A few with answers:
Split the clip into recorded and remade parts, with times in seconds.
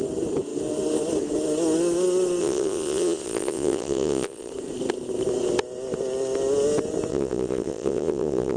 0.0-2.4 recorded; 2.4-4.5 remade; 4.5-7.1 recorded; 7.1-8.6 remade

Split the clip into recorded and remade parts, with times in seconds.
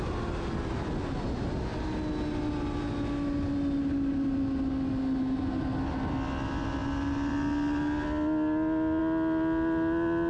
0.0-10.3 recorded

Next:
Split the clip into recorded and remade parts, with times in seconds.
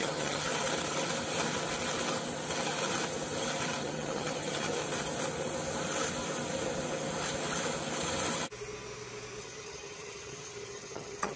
0.0-0.5 remade; 0.5-3.8 recorded; 3.8-4.8 remade; 4.8-9.4 recorded; 9.4-11.4 remade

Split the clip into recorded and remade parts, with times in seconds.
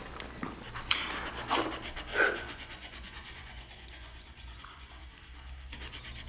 0.0-2.1 recorded; 2.1-5.0 remade; 5.0-6.3 recorded